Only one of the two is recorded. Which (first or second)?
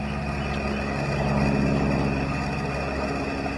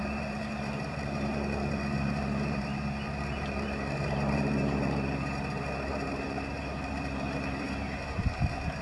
first